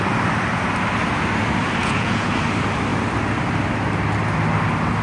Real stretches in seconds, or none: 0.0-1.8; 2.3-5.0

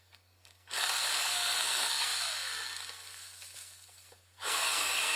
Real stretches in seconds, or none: none

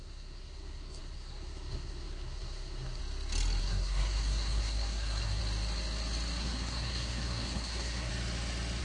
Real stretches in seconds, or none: 3.0-3.6; 5.4-6.4; 8.1-8.8

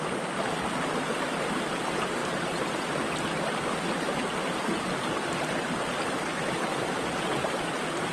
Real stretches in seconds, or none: 0.0-8.1